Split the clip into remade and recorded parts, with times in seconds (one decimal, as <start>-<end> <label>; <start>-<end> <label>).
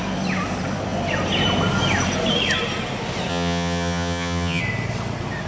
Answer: 0.0-3.3 recorded; 3.3-4.6 remade; 4.6-5.5 recorded